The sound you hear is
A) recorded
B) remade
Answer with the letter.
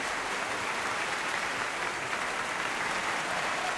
A